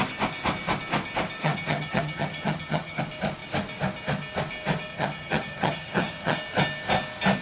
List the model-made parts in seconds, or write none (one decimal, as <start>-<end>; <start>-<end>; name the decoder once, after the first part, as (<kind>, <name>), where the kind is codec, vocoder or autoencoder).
1.4-3.0 (vocoder, HiFi-GAN); 4.9-6.4